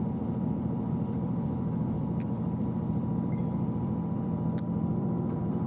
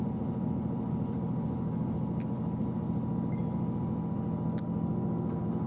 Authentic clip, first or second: second